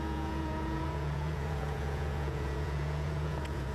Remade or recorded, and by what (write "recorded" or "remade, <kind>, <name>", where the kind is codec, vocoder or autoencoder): remade, vocoder, Vocos